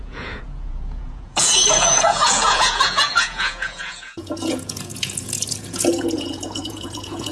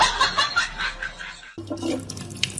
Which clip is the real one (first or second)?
second